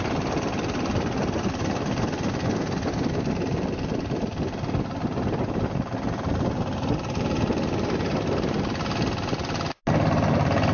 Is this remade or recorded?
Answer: recorded